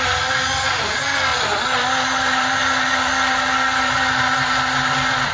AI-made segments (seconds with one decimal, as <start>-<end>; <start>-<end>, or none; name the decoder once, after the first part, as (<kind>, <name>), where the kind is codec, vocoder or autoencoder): none